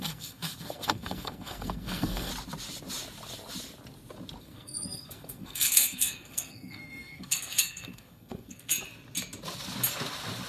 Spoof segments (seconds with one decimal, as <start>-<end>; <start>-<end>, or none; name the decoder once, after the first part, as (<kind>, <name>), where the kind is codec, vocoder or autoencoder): 0.0-2.3 (codec, SNAC); 4.4-8.7